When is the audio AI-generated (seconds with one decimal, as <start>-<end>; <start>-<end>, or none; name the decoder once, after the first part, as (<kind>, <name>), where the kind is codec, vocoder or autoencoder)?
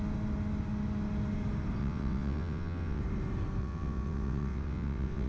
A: 1.8-3.0 (vocoder, WaveNeXt); 3.6-5.3